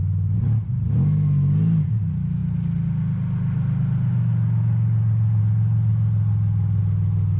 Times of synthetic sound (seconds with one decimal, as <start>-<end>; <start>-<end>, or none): none